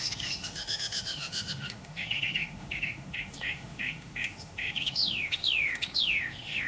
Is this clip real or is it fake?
fake